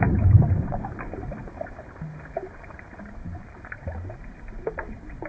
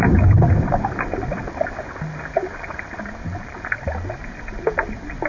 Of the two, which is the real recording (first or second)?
second